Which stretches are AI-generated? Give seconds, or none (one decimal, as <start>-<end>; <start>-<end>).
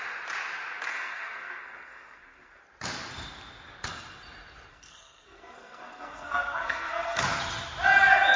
0.9-2.6; 4.7-7.2